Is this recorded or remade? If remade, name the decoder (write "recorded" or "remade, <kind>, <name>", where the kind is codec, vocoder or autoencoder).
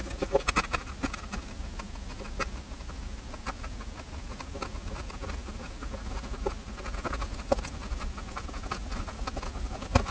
recorded